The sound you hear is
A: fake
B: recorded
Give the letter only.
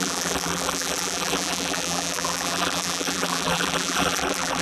A